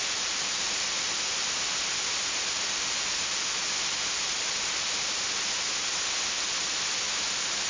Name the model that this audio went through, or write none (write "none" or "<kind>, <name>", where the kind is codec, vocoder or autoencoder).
none